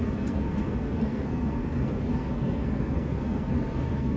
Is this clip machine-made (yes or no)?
yes